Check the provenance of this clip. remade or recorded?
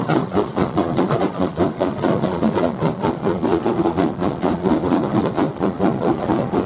remade